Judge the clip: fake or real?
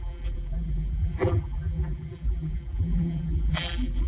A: fake